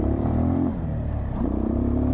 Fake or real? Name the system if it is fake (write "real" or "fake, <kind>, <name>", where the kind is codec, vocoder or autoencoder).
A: fake, vocoder, BigVGAN v2